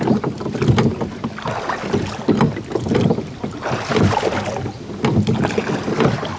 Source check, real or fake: real